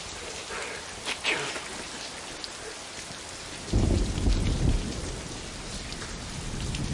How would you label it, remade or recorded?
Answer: recorded